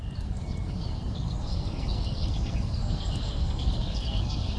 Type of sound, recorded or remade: remade